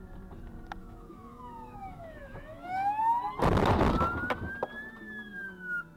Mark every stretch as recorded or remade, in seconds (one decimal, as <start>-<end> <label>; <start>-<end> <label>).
0.0-0.8 recorded; 0.8-3.0 remade; 3.0-6.0 recorded